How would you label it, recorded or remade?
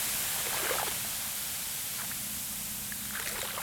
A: recorded